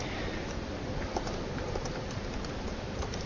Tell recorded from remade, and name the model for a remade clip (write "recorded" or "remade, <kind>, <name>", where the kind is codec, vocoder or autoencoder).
remade, vocoder, BigVGAN v2